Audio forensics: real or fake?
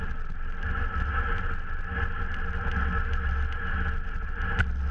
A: real